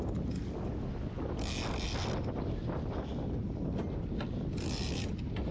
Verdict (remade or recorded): recorded